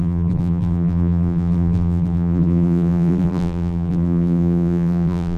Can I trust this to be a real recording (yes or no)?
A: no